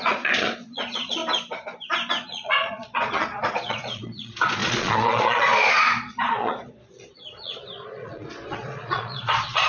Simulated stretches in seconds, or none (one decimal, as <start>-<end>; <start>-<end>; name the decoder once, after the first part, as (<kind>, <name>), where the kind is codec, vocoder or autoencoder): 0.0-1.2 (vocoder, Vocos); 2.1-9.7